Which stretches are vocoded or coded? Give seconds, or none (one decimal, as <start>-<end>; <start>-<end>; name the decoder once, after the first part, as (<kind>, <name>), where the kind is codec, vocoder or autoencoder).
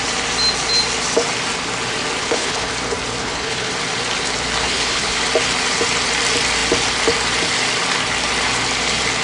2.2-2.7 (codec, HILCodec); 3.2-3.7; 4.6-5.2